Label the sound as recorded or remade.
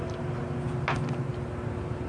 recorded